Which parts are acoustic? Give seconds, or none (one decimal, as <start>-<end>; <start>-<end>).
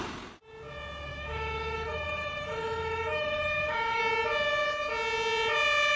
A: 0.0-1.1; 4.0-6.0